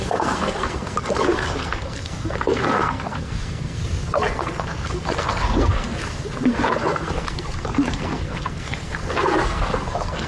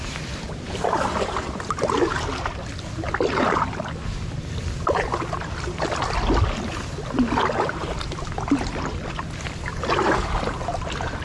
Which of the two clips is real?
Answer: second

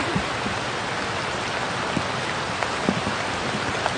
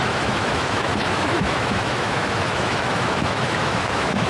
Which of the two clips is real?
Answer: first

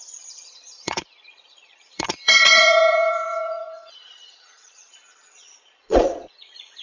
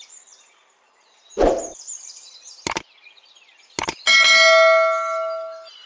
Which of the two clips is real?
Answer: second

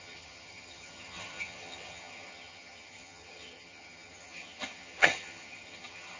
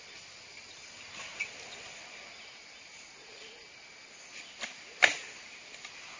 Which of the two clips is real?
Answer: second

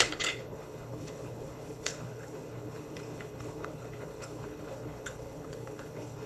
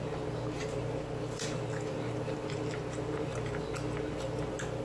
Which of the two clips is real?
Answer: second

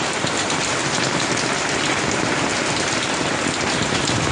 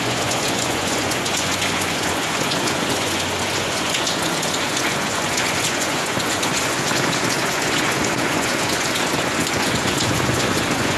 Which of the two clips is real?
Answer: first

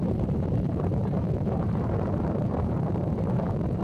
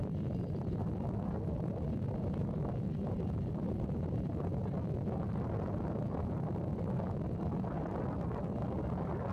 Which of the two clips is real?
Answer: second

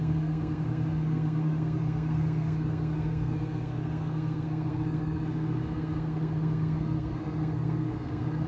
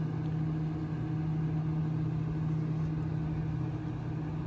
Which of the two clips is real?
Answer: second